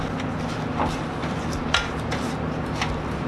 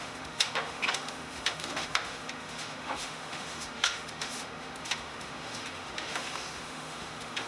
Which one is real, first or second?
first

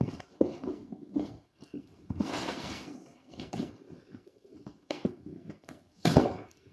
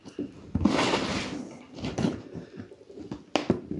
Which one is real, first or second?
second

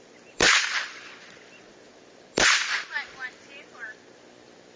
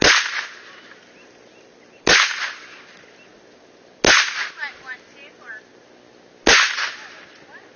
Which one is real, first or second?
second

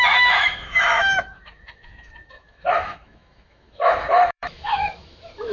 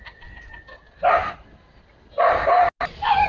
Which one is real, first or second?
second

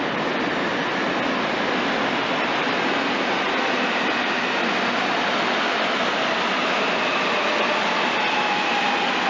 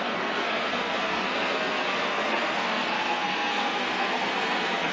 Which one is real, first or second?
first